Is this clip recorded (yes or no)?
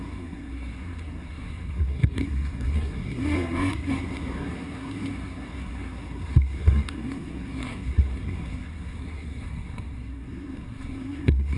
no